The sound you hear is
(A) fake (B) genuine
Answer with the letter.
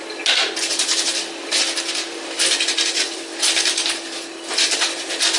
B